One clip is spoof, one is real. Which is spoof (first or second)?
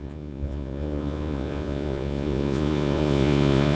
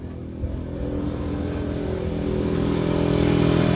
first